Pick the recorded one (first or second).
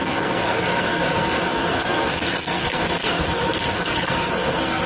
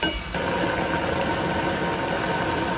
second